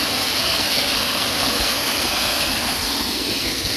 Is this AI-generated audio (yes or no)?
yes